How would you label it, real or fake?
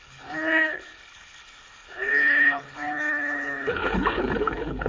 fake